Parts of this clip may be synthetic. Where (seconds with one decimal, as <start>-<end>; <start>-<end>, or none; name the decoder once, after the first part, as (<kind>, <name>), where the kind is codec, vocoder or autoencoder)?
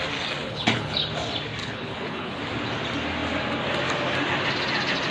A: 0.4-1.1 (codec, HILCodec); 1.6-2.4